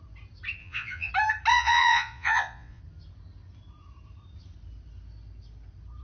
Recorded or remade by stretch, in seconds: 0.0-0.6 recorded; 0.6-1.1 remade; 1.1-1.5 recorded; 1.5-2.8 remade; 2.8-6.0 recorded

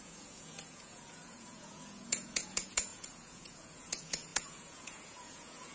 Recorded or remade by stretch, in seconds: 0.0-5.7 remade

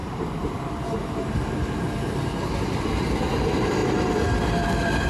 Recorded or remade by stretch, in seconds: 0.0-5.1 recorded

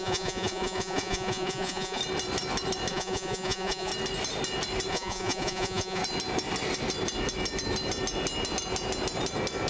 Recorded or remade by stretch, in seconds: 0.0-2.0 remade; 2.0-2.9 recorded; 2.9-3.9 remade; 3.9-4.9 recorded; 4.9-6.0 remade; 6.0-9.7 recorded

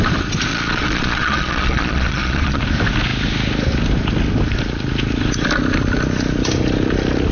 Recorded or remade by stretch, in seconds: 0.0-0.5 recorded; 0.5-2.6 remade; 2.6-7.3 recorded